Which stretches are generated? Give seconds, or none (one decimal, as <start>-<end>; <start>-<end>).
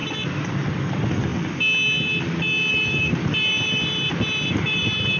0.5-1.3; 2.7-5.2